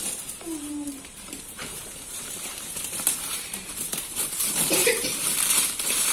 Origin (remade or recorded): remade